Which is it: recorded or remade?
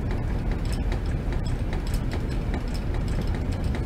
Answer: recorded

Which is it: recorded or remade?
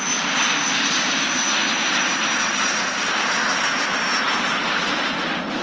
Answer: recorded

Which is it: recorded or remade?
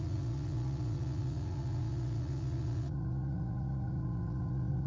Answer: remade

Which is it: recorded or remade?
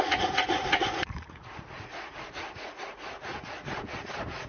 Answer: remade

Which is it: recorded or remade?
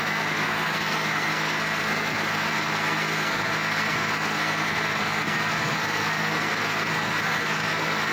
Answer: remade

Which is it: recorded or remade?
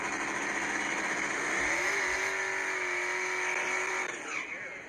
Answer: recorded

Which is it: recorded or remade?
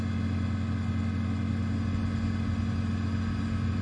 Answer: recorded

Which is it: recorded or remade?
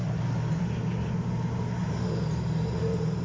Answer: recorded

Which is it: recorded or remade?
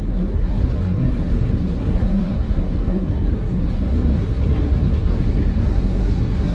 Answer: remade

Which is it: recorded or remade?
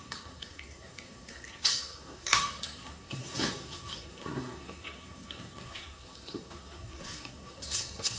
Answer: remade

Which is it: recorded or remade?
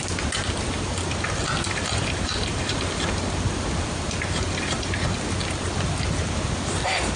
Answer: recorded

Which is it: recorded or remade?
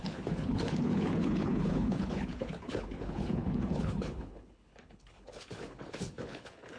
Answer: remade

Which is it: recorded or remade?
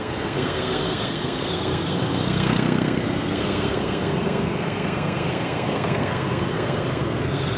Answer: remade